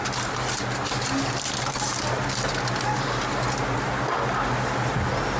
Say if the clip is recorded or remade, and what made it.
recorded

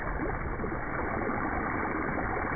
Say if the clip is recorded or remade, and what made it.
recorded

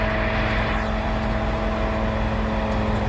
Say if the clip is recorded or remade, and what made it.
recorded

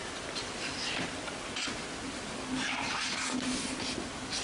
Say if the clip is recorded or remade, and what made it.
recorded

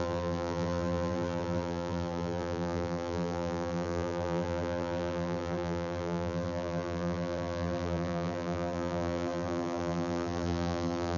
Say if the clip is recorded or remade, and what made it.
remade, vocoder, BigVGAN v2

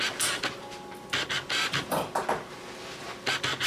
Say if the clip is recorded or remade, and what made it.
recorded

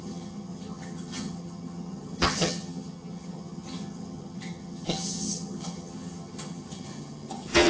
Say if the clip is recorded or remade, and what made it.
remade, vocoder, HiFi-GAN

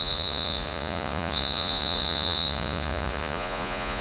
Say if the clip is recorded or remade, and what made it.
remade, vocoder, Vocos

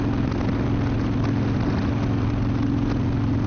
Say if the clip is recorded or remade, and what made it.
recorded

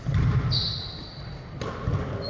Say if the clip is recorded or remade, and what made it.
recorded